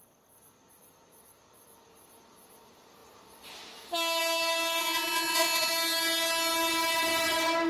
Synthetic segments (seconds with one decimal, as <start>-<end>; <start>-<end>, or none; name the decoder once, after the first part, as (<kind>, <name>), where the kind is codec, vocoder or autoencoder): 4.8-5.7 (vocoder, Vocos)